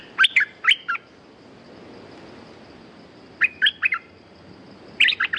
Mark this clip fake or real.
real